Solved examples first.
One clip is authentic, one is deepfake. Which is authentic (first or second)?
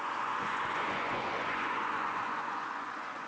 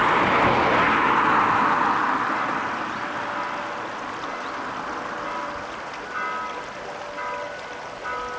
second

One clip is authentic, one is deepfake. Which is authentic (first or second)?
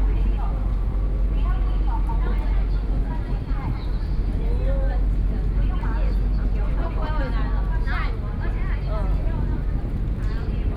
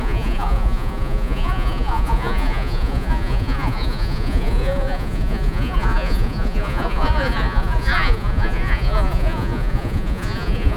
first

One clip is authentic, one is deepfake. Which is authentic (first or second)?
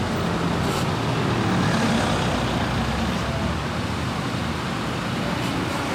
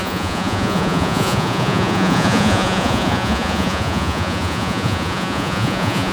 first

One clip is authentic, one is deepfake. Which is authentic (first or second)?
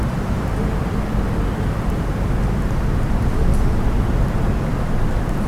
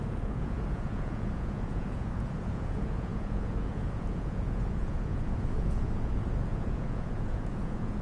first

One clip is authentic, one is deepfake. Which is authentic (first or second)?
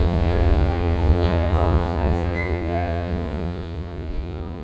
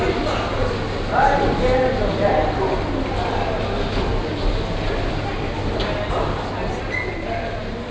second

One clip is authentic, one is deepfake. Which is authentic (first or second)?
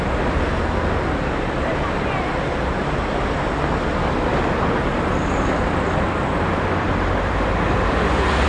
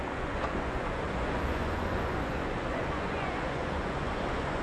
first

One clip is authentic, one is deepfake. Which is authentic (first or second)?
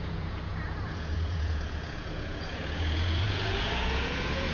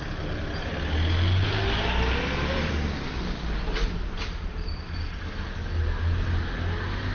second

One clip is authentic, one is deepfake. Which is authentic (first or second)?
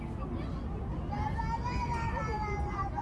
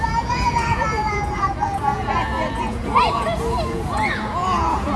first